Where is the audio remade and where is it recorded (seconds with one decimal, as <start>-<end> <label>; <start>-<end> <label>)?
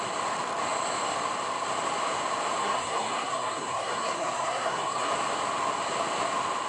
0.0-2.6 recorded; 2.6-5.1 remade; 5.1-6.7 recorded